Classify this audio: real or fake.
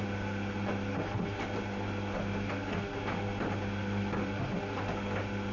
real